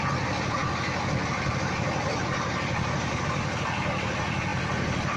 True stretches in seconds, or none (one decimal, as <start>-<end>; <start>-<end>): 0.0-5.2